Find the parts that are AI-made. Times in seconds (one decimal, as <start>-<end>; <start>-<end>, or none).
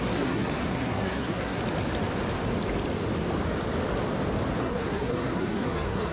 0.0-1.6; 4.6-6.1